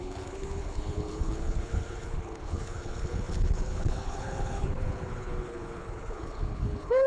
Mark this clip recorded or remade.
remade